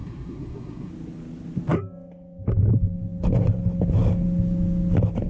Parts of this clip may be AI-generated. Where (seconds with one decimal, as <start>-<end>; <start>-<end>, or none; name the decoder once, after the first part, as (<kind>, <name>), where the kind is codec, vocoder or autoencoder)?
0.0-0.9 (codec, SNAC)